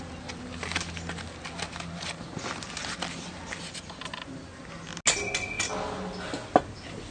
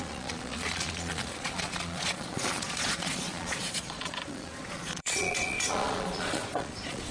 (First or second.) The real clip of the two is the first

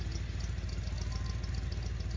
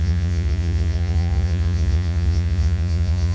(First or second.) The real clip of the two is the first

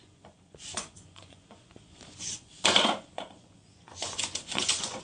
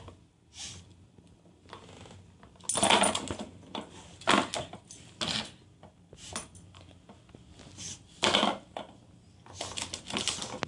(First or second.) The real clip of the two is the second